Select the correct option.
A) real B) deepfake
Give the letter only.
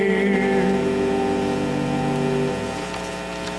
A